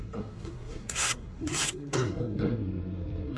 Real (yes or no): no